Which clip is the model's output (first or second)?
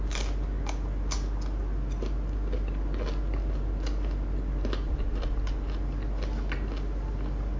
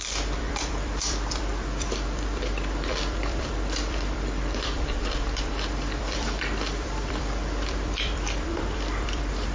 second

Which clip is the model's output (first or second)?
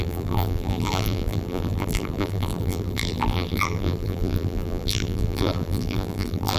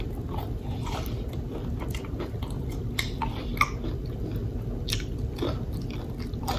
first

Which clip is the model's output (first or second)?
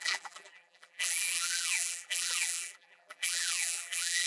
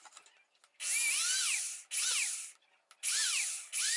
first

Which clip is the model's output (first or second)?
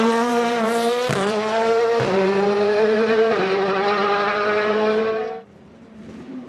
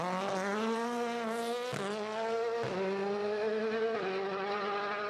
first